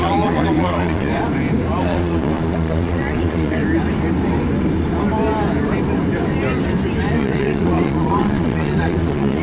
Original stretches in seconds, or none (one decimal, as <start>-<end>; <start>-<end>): 1.1-1.8; 3.6-7.1